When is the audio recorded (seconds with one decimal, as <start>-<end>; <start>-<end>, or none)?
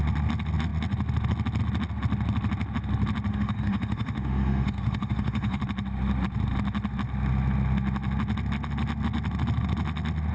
0.0-3.3; 5.6-10.3